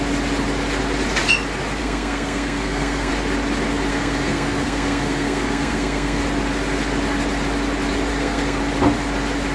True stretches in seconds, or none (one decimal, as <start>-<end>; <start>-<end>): 0.0-1.8; 3.1-3.9; 6.2-8.1; 8.6-9.5